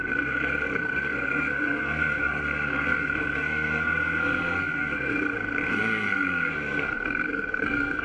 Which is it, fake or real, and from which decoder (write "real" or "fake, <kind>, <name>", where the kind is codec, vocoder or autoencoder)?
fake, codec, SNAC